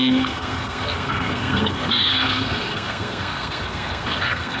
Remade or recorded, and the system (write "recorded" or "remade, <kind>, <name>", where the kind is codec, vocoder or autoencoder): remade, codec, SNAC